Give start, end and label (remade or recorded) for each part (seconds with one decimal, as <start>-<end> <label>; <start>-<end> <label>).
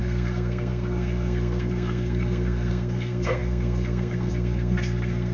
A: 0.0-5.3 remade